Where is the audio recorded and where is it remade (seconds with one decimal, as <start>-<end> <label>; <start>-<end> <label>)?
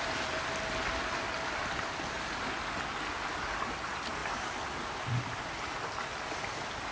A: 0.0-6.9 recorded